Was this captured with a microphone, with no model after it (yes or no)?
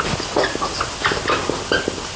yes